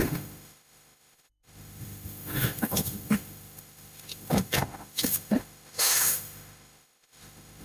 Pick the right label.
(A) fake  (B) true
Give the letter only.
A